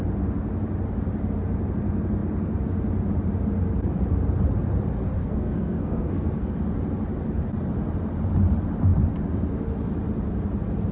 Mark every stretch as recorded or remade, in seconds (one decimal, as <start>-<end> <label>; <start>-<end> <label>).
0.0-5.2 recorded; 5.2-6.5 remade; 6.5-10.9 recorded